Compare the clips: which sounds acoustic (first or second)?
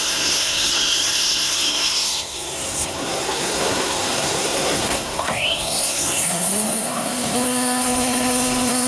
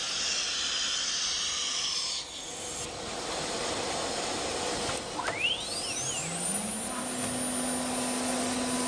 second